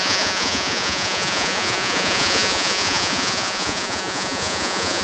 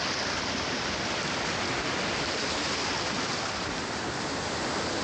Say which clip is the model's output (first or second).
first